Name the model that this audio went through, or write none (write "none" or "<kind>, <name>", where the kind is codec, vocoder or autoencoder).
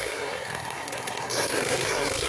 codec, SNAC